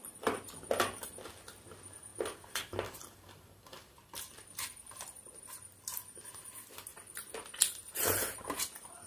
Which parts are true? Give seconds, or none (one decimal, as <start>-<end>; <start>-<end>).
0.0-9.1